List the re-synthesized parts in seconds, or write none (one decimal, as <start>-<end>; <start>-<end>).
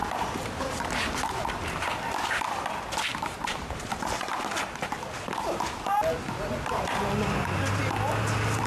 0.0-0.8; 3.1-4.2